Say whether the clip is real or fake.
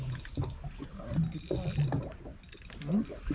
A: real